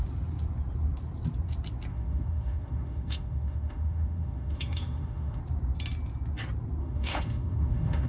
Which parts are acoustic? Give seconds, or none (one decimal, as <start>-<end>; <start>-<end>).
0.0-1.9; 5.4-6.8